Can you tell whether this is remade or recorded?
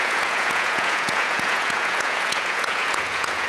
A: remade